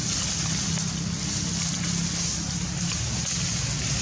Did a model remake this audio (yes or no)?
no